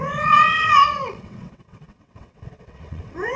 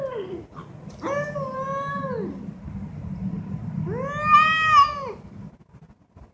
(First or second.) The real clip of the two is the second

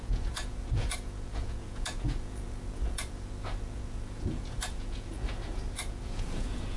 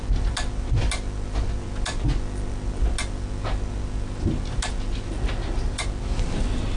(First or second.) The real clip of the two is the second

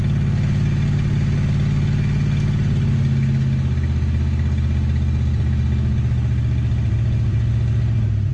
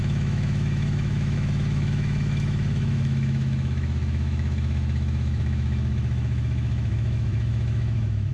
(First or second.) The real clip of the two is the first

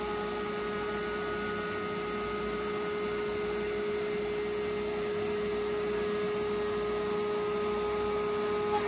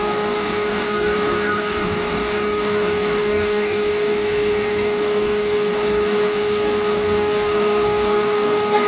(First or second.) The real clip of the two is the first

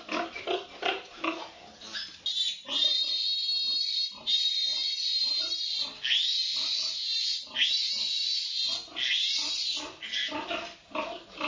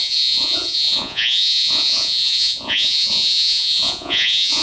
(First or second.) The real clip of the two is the first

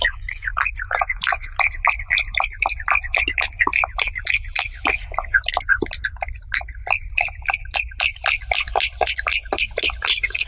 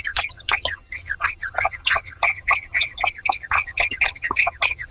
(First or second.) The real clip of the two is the first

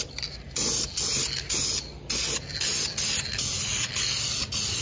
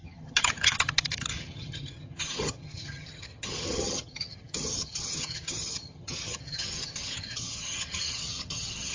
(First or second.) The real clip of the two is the first